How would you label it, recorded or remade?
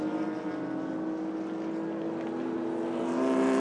recorded